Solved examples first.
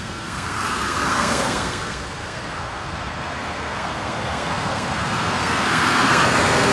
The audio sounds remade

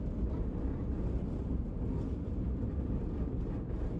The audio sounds recorded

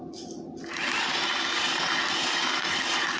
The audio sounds recorded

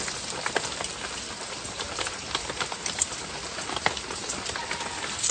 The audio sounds recorded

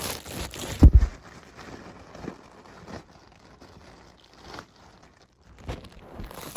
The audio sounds recorded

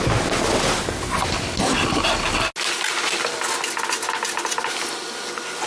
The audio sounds recorded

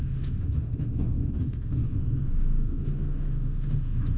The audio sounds remade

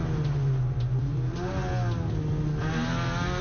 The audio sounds recorded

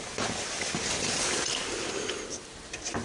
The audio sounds recorded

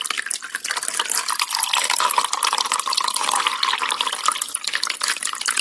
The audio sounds recorded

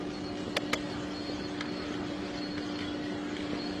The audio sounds recorded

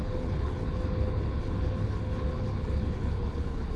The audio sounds remade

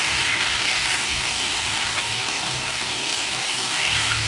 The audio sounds remade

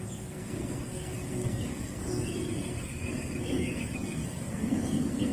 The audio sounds remade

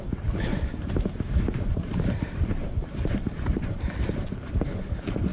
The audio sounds remade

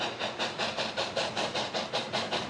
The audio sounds recorded